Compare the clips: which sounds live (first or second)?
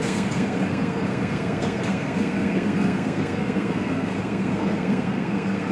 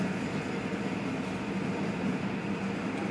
second